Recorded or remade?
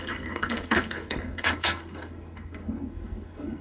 remade